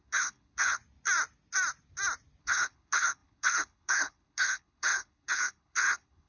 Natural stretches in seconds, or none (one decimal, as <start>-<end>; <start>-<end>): 0.8-2.4